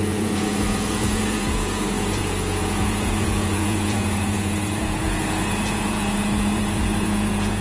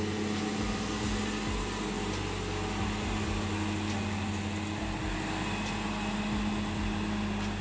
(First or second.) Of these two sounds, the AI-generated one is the first